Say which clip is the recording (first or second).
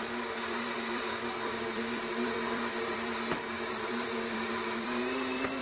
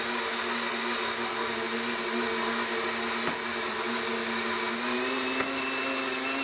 second